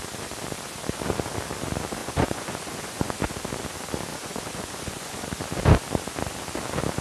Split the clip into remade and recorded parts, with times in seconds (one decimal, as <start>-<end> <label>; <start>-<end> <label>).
0.0-2.0 recorded; 2.0-3.2 remade; 3.2-4.1 recorded; 4.1-5.3 remade; 5.3-7.0 recorded

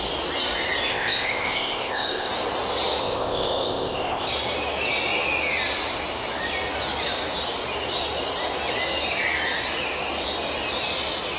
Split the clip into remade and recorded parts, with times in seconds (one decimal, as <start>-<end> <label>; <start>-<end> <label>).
0.0-0.9 recorded; 0.9-2.3 remade; 2.3-3.0 recorded; 3.0-4.3 remade; 4.3-11.4 recorded

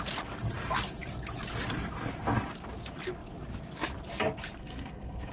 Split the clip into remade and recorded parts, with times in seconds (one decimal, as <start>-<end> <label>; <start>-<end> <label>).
0.0-4.6 recorded; 4.6-5.3 remade

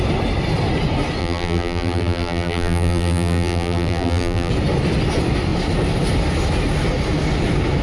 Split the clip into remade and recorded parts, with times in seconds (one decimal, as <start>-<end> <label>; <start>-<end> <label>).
0.0-1.2 recorded; 1.2-4.5 remade; 4.5-7.8 recorded

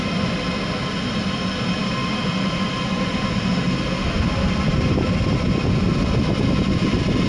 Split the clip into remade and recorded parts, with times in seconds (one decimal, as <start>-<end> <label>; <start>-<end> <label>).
0.0-7.3 recorded

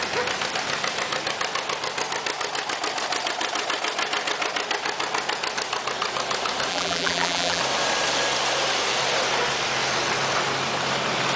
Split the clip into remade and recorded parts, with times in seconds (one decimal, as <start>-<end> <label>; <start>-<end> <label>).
0.0-6.7 recorded; 6.7-7.6 remade; 7.6-11.4 recorded

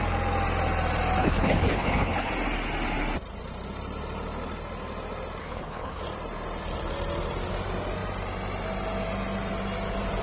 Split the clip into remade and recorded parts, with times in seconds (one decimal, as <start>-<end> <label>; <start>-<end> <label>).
0.0-1.2 recorded; 1.2-2.3 remade; 2.3-5.4 recorded; 5.4-6.0 remade; 6.0-10.2 recorded

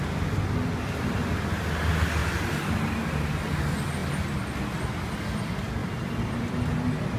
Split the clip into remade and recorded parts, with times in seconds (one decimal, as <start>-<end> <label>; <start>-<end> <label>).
0.0-2.2 recorded; 2.2-2.7 remade; 2.7-5.8 recorded; 5.8-6.6 remade; 6.6-7.2 recorded